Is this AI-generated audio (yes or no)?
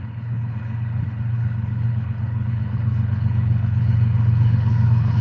yes